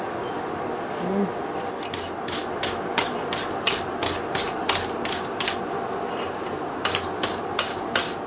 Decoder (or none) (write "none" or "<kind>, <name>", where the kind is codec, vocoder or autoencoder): none